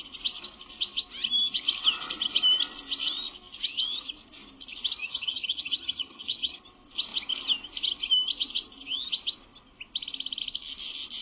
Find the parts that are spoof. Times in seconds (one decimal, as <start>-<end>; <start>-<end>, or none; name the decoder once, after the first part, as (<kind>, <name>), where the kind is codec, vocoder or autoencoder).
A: 5.0-6.6 (vocoder, HiFi-GAN)

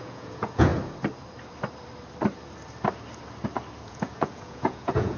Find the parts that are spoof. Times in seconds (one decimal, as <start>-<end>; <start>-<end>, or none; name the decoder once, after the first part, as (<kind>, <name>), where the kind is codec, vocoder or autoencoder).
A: 0.0-0.7 (vocoder, Vocos); 3.8-5.2

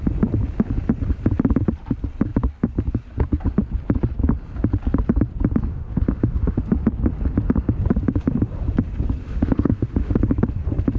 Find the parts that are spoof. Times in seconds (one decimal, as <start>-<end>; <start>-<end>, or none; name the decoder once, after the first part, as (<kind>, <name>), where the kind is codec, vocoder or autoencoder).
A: 5.7-6.6 (autoencoder, DAC-VAE); 9.2-10.2

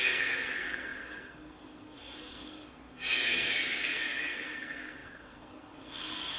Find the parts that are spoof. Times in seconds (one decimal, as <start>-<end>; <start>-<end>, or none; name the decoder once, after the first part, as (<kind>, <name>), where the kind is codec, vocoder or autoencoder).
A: 0.0-6.4 (codec, SNAC)